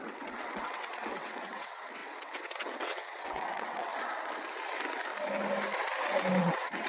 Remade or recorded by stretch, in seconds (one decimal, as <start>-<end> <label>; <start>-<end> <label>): 0.0-3.9 remade; 3.9-6.4 recorded; 6.4-6.9 remade